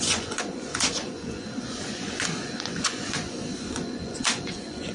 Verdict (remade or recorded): remade